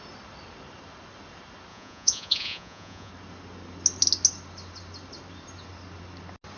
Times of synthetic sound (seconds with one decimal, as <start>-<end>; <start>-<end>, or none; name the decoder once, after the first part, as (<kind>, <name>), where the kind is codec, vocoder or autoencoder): 1.7-3.1 (vocoder, Vocos)